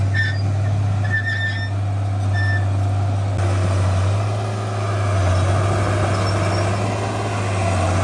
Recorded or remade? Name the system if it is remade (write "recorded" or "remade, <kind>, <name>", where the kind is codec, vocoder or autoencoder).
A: recorded